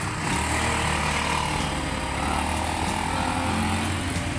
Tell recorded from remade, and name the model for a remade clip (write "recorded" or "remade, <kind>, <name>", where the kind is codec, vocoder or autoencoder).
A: recorded